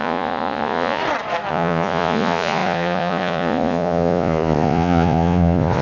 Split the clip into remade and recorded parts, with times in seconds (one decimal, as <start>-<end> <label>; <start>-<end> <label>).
0.0-1.0 remade; 1.0-1.5 recorded; 1.5-5.8 remade